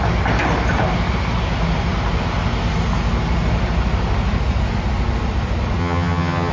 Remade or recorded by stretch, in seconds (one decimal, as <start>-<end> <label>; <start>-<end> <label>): 0.0-5.8 recorded; 5.8-6.5 remade